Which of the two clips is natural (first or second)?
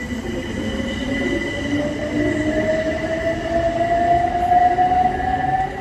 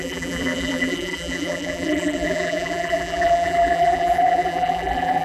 first